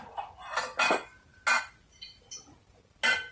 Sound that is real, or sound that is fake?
real